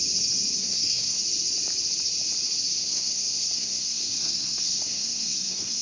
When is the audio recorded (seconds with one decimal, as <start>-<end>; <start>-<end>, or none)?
0.0-0.6; 1.2-2.8